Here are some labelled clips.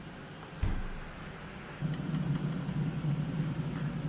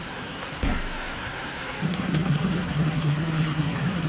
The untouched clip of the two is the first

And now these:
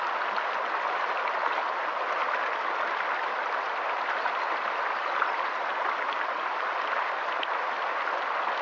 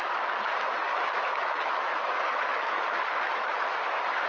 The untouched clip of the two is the first